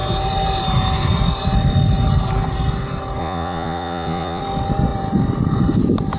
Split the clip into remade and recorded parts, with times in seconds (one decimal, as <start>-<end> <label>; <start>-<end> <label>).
0.0-3.2 recorded; 3.2-4.4 remade; 4.4-6.2 recorded